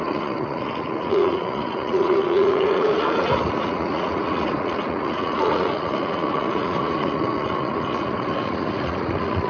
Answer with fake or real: fake